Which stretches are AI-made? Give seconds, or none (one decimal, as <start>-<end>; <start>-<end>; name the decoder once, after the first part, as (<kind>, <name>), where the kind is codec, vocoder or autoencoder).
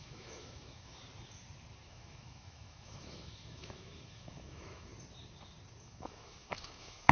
0.0-1.0 (autoencoder, DAC-VAE); 1.8-4.9; 5.8-7.1